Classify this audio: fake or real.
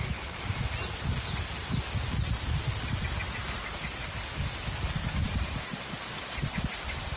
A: real